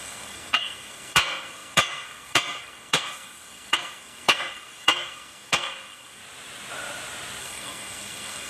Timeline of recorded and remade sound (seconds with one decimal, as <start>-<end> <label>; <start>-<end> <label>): 0.0-6.2 remade; 6.2-7.4 recorded; 7.4-8.5 remade